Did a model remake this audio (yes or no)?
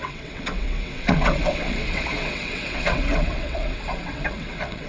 yes